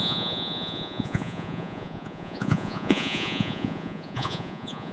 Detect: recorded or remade remade